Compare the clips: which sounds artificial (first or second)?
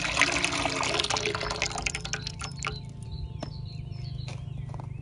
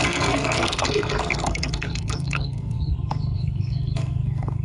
second